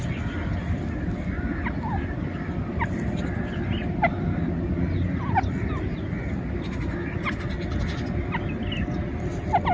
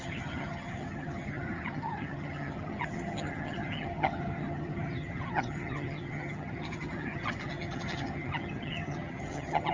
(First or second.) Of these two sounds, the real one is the first